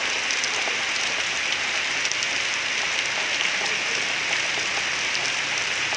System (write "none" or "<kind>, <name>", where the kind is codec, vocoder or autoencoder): none